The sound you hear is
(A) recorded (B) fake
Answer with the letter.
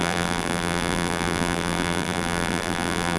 B